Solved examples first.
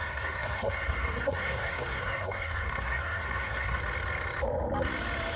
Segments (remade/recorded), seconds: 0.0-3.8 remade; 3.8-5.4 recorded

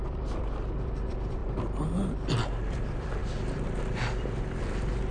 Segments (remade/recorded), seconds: 0.0-1.4 remade; 1.4-2.7 recorded; 2.7-5.1 remade

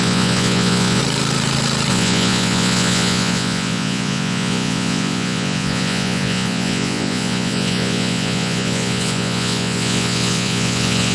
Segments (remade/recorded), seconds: 0.0-1.0 remade; 1.0-1.9 recorded; 1.9-11.1 remade

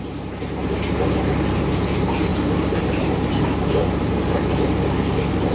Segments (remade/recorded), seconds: 0.0-2.3 recorded; 2.3-3.4 remade; 3.4-3.8 recorded; 3.8-4.4 remade; 4.4-5.5 recorded

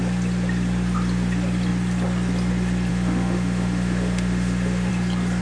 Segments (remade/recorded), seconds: 0.0-2.9 recorded; 2.9-4.9 remade; 4.9-5.4 recorded

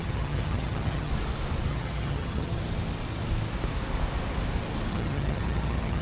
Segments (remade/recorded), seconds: 0.0-1.1 remade; 1.1-1.7 recorded; 1.7-2.6 remade; 2.6-4.9 recorded; 4.9-6.0 remade

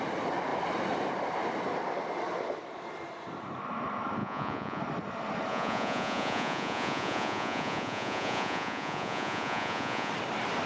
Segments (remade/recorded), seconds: 0.0-4.2 recorded; 4.2-4.8 remade; 4.8-5.5 recorded; 5.5-10.1 remade; 10.1-10.7 recorded